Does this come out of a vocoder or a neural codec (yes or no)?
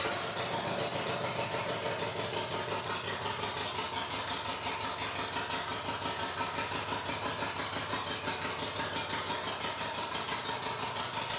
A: no